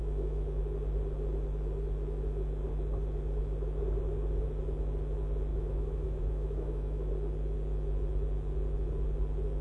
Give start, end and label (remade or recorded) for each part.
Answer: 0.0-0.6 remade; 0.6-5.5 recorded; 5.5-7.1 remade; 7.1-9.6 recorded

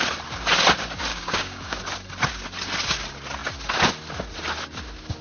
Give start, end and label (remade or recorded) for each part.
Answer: 0.0-1.1 recorded; 1.1-1.8 remade; 1.8-5.2 recorded